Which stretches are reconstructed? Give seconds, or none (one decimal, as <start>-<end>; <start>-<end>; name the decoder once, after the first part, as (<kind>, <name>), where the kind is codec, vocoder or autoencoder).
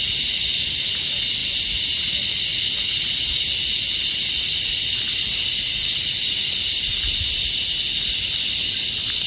1.4-2.4 (vocoder, BigVGAN v2); 6.9-7.6